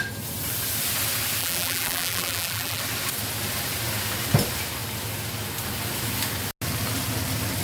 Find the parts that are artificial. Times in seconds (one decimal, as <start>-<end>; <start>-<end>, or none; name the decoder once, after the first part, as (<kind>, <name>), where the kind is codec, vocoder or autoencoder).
1.4-2.8 (vocoder, BigVGAN v2)